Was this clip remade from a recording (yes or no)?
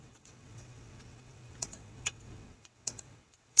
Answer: yes